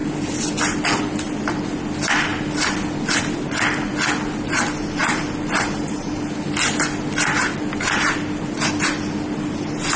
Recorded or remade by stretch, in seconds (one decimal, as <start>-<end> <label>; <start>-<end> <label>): 0.0-10.0 recorded